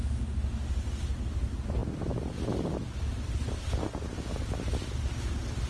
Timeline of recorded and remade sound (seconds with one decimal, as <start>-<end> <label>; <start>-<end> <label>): 0.0-5.7 recorded